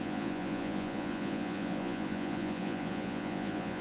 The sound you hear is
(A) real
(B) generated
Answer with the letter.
B